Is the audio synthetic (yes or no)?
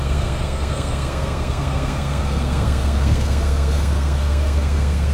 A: yes